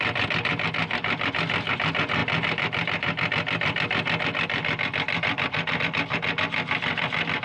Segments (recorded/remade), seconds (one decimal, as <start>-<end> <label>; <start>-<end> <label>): 0.0-7.4 recorded